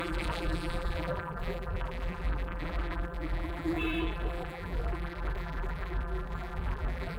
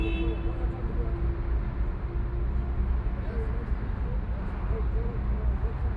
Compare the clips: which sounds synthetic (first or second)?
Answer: first